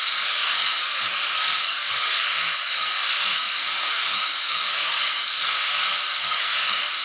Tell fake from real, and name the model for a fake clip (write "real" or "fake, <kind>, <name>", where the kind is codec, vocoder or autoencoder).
fake, codec, SNAC